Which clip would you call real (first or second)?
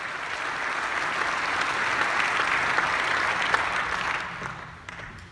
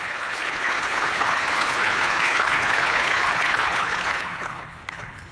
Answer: first